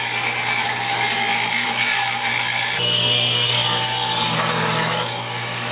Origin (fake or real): fake